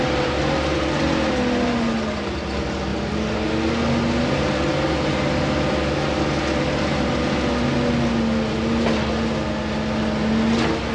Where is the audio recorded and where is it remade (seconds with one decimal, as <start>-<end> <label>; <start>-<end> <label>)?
0.0-10.9 recorded